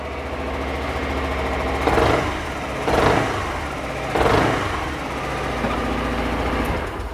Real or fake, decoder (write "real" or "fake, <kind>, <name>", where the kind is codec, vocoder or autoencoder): real